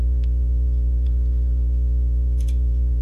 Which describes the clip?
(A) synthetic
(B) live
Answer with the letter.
A